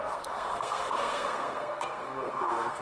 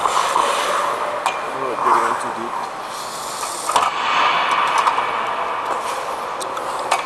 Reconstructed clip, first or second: first